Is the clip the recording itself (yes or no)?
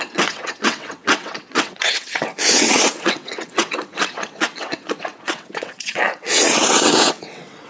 no